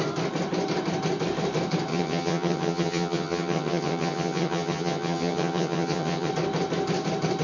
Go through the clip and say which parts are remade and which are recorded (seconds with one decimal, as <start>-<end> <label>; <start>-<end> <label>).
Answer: 0.0-1.9 recorded; 1.9-6.3 remade; 6.3-7.4 recorded